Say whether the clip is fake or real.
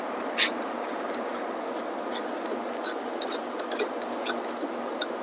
real